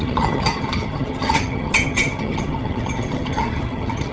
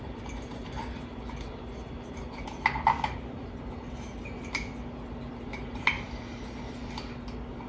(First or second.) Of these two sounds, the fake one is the first